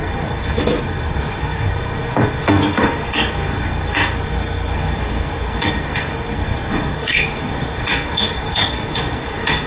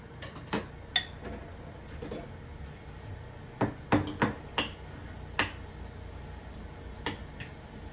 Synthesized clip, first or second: first